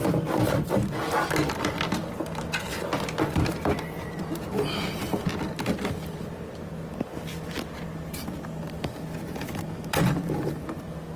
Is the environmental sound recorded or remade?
recorded